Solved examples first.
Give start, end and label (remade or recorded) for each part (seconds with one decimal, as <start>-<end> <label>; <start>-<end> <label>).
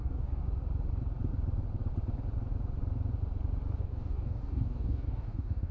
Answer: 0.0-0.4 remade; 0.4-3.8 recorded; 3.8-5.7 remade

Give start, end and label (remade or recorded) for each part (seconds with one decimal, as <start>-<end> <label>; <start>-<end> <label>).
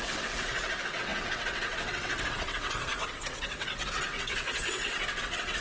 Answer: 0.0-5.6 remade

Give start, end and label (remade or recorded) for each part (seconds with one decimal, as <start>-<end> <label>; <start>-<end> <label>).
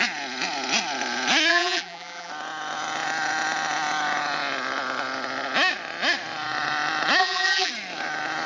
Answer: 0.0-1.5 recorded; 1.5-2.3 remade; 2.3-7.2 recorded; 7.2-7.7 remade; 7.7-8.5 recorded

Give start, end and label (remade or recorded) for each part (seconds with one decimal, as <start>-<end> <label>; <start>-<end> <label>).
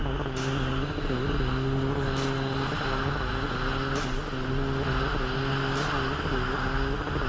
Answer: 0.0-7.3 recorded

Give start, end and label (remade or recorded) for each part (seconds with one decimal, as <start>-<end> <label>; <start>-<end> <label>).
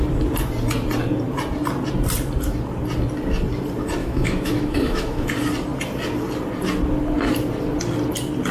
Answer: 0.0-4.0 recorded; 4.0-5.3 remade; 5.3-8.5 recorded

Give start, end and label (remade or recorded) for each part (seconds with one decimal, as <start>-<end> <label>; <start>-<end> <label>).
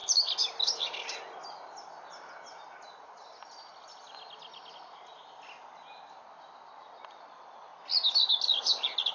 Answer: 0.0-9.1 recorded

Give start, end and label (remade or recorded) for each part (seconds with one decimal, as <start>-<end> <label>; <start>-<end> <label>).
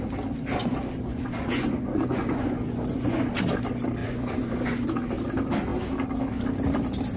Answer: 0.0-0.6 recorded; 0.6-3.3 remade; 3.3-4.0 recorded; 4.0-4.9 remade; 4.9-7.2 recorded